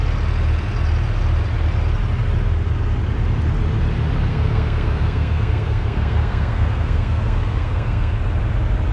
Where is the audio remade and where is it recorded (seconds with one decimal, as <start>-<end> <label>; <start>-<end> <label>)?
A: 0.0-4.3 recorded; 4.3-8.2 remade; 8.2-8.9 recorded